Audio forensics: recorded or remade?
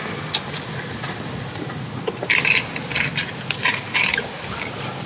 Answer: recorded